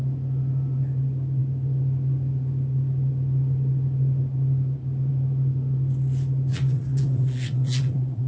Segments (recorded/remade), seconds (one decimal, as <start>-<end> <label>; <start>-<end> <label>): 0.0-6.5 recorded; 6.5-8.3 remade